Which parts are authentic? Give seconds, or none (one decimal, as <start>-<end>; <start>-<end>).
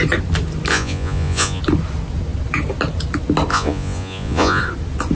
0.0-0.7; 1.6-3.5; 4.6-5.1